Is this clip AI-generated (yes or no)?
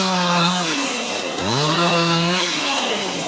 yes